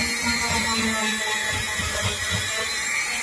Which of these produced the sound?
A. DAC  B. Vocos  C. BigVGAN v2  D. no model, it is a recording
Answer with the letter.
C